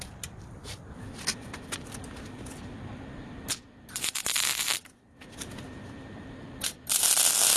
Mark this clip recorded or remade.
recorded